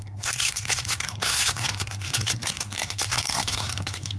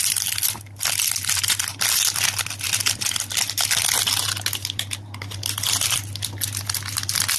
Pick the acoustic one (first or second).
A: second